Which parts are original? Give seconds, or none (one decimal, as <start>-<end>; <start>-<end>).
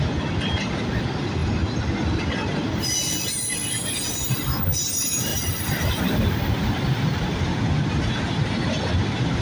0.0-9.4